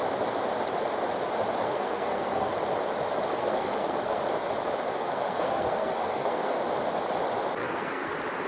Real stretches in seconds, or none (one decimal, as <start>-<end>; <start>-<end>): 0.0-1.6; 2.5-3.4; 4.2-5.0; 6.6-7.6; 8.1-8.5